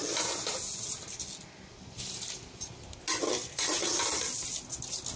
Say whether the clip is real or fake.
real